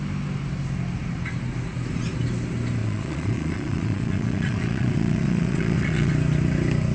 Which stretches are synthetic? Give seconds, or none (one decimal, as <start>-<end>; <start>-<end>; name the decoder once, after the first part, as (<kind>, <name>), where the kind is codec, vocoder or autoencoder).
2.8-6.1 (vocoder, Vocos)